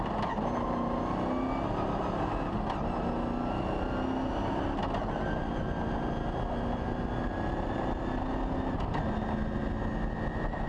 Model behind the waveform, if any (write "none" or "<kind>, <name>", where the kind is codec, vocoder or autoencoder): none